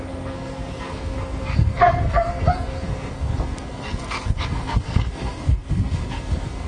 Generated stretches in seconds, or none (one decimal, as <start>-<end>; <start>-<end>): 0.0-6.7